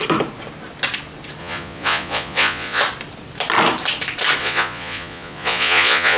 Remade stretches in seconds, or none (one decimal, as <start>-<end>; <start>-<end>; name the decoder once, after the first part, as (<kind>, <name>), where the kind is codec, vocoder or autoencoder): 1.4-2.8 (vocoder, Vocos); 4.4-6.2